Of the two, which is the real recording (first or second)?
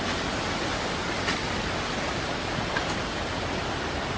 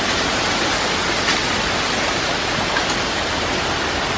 second